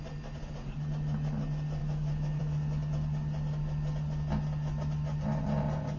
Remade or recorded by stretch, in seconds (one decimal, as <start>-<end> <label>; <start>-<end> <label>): 0.0-1.8 recorded; 1.8-2.4 remade; 2.4-6.0 recorded